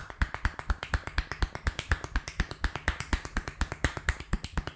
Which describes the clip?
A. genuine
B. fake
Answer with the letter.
B